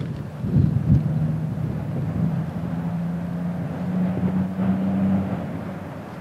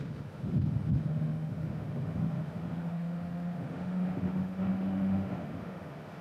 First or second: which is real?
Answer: first